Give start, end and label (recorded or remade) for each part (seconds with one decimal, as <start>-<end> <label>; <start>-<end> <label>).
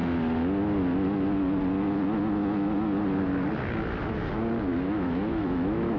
0.0-4.7 recorded; 4.7-6.0 remade